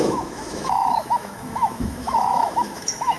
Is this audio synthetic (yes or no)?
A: yes